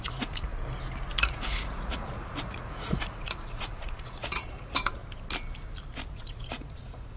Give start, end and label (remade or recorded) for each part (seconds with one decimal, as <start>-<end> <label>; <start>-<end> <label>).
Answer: 0.0-0.5 remade; 0.5-1.2 recorded; 1.2-5.0 remade; 5.0-6.1 recorded; 6.1-7.2 remade